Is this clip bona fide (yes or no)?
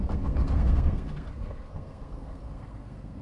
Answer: no